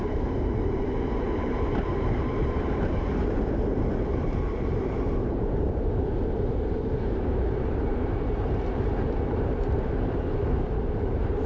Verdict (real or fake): fake